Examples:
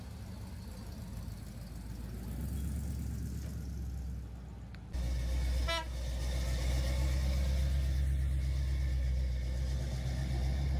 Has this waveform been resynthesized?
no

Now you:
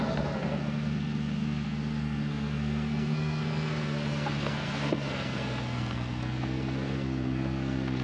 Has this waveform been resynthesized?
yes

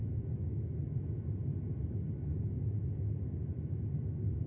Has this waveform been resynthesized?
no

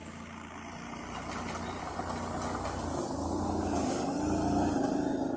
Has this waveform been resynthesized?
no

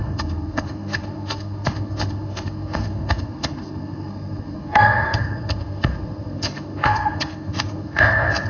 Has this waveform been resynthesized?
yes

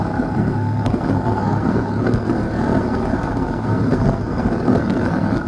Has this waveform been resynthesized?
yes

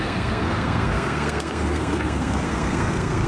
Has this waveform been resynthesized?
yes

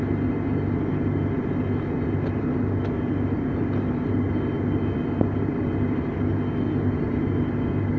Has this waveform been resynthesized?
no